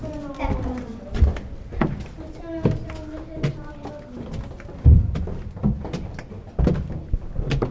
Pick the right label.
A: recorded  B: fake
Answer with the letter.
A